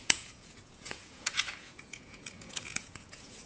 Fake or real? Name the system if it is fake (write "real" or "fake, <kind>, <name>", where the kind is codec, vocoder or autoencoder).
fake, vocoder, Vocos